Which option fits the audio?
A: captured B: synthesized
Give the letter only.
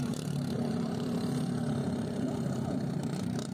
B